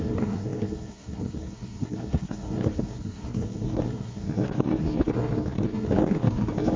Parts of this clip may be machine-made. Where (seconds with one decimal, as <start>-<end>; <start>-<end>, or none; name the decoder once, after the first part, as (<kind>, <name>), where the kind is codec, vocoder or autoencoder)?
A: 0.0-6.8 (codec, SNAC)